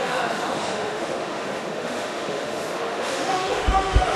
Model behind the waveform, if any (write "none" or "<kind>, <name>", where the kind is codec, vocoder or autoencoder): autoencoder, DAC-VAE